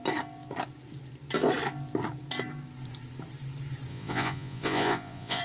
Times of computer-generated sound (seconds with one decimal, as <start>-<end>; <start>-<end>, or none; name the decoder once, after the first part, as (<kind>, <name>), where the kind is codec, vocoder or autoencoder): 3.9-5.4 (vocoder, Vocos)